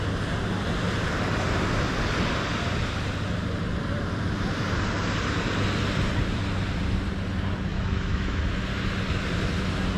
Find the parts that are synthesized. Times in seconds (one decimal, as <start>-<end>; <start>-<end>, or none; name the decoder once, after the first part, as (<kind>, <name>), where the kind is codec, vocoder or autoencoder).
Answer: 7.7-8.4 (autoencoder, DAC-VAE)